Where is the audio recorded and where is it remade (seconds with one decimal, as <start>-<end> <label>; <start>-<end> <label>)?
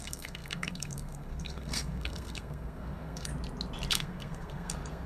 0.0-3.3 remade; 3.3-3.9 recorded; 3.9-5.1 remade